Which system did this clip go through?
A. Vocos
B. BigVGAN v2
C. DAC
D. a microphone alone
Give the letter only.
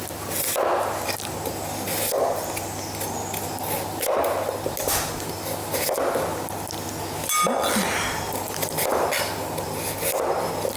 D